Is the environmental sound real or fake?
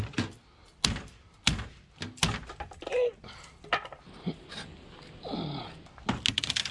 real